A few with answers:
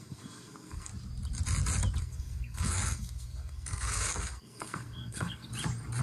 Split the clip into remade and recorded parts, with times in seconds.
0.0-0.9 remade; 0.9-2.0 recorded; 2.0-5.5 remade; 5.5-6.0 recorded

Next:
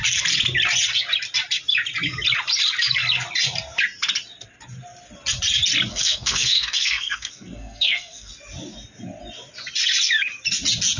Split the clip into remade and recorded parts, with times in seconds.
0.0-5.9 recorded; 5.9-8.3 remade; 8.3-11.0 recorded

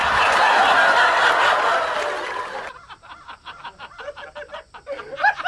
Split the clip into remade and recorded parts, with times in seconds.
0.0-5.5 recorded

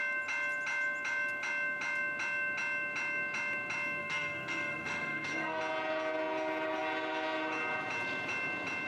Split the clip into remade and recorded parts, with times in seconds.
0.0-4.0 recorded; 4.0-5.6 remade; 5.6-8.9 recorded

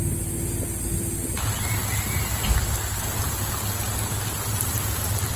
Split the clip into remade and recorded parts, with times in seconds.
0.0-5.4 recorded

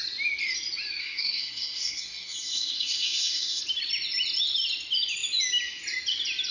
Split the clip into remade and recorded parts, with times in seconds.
0.0-1.0 recorded; 1.0-3.6 remade; 3.6-6.5 recorded

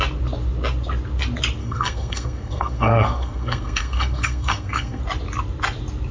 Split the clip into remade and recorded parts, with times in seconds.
0.0-1.6 recorded; 1.6-5.0 remade; 5.0-6.1 recorded